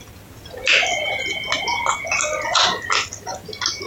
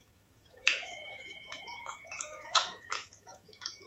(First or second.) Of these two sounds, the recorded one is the first